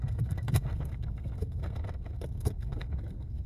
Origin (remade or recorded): remade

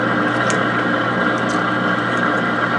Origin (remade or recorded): recorded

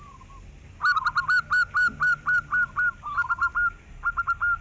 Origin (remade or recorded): recorded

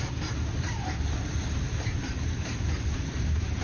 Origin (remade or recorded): recorded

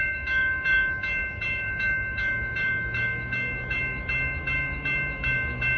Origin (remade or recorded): remade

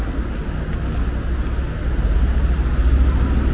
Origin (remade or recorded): recorded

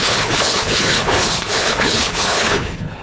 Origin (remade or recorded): remade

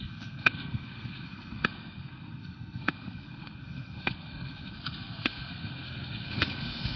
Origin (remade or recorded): remade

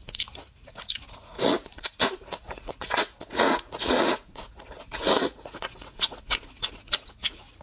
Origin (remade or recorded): remade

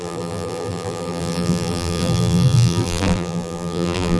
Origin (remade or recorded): remade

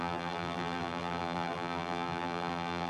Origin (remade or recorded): remade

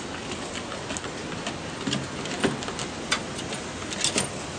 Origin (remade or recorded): recorded